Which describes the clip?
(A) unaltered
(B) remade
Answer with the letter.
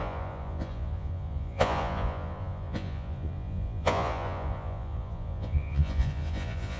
B